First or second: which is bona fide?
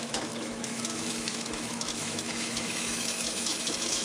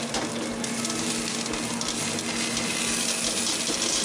second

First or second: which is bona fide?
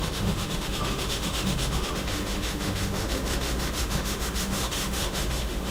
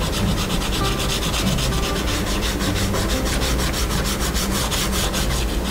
second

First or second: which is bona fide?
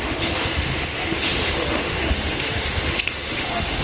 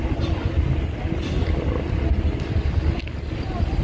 second